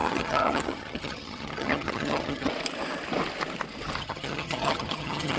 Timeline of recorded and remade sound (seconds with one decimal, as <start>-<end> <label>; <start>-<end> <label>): 0.0-2.5 remade; 2.5-4.0 recorded; 4.0-5.4 remade